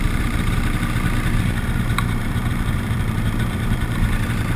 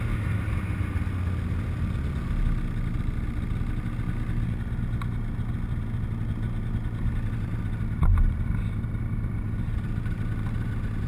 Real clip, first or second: second